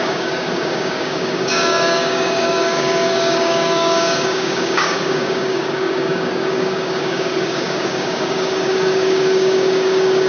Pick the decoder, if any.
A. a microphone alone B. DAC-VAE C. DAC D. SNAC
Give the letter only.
C